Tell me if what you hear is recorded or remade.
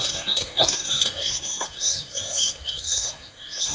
remade